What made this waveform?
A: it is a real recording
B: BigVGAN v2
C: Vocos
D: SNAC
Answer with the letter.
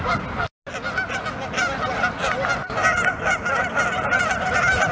A